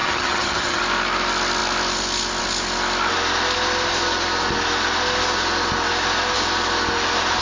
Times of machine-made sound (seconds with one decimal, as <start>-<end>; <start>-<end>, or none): 0.0-0.8